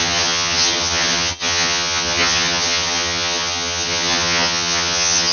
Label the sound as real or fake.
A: fake